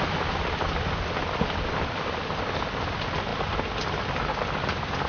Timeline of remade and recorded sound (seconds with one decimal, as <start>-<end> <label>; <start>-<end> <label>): 0.0-5.1 recorded